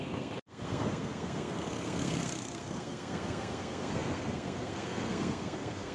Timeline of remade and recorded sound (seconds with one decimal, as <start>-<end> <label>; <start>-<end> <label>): 0.0-5.9 remade